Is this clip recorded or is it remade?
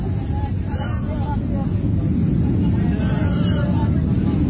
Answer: recorded